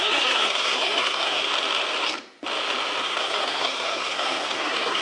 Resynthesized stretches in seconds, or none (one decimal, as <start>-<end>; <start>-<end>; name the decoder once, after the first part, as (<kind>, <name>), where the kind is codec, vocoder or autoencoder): 0.0-1.5 (codec, SNAC); 3.0-5.0